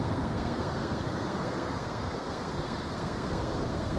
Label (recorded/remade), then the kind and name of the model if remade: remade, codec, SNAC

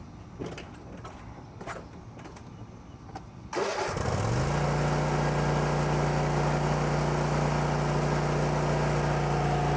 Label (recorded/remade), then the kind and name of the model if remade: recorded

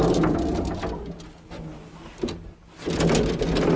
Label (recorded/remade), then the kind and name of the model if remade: recorded